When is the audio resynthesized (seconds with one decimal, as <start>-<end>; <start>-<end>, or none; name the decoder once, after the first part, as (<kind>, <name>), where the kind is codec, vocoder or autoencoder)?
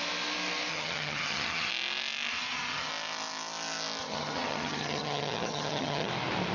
0.7-1.7 (vocoder, HiFi-GAN); 2.3-2.9; 4.0-6.1